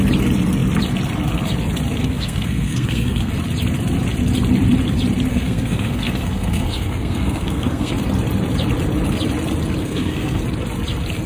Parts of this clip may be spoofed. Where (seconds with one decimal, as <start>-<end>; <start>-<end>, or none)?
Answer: 2.0-3.3; 5.3-7.9; 9.8-10.4